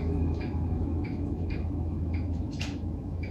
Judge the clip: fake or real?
fake